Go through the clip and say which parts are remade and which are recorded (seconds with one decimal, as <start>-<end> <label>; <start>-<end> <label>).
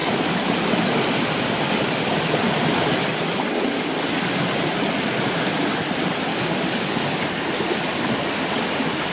0.0-6.3 recorded; 6.3-7.2 remade; 7.2-9.1 recorded